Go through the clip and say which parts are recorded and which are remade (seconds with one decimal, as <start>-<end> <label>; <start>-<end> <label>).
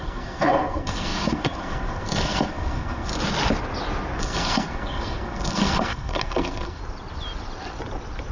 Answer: 0.0-3.1 remade; 3.1-4.2 recorded; 4.2-6.8 remade; 6.8-8.3 recorded